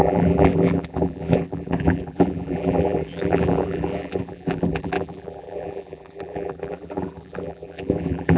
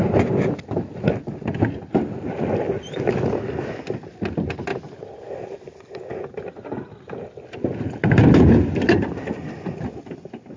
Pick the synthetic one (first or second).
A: first